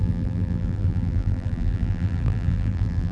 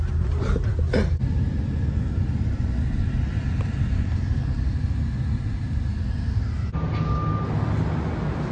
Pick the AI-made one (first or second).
first